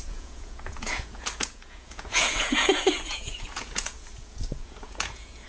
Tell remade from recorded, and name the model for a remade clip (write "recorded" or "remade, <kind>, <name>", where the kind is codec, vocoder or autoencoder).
remade, vocoder, Vocos